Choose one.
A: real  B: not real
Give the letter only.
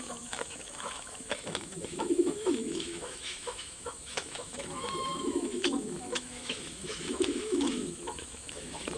B